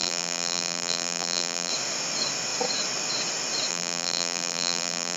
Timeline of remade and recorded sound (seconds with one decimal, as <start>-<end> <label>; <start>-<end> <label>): 0.0-1.7 remade; 1.7-3.7 recorded; 3.7-5.2 remade